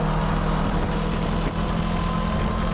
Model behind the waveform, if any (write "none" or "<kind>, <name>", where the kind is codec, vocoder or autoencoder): none